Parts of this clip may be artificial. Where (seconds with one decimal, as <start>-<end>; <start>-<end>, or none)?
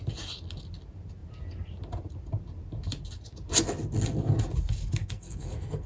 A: 5.0-5.9